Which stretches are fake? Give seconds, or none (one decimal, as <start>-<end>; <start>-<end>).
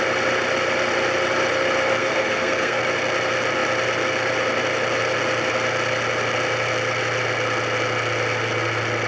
2.0-2.8